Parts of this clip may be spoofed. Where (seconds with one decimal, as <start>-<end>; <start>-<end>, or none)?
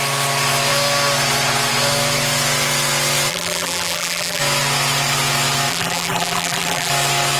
3.3-4.4; 5.7-6.9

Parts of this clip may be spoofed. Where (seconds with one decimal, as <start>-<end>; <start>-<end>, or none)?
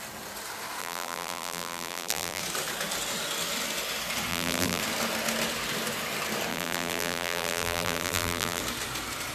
0.8-2.4; 4.3-4.8; 6.5-8.6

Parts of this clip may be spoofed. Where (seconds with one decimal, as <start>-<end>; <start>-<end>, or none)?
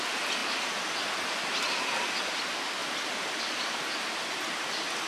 none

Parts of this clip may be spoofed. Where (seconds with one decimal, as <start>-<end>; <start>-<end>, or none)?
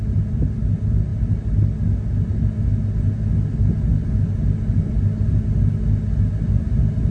0.0-1.1; 4.8-5.3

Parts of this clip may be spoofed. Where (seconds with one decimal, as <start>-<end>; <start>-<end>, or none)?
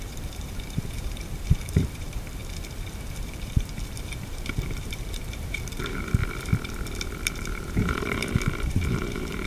0.0-2.4; 3.2-6.2; 7.2-9.5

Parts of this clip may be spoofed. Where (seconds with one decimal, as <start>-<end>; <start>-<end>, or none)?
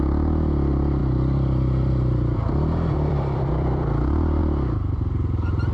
1.0-4.4